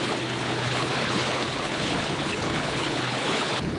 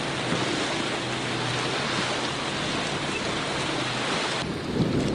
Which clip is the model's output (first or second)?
first